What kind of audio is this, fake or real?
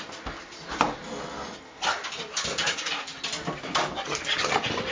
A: real